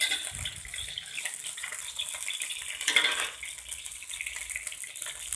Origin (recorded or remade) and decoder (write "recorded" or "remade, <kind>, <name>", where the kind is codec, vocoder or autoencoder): recorded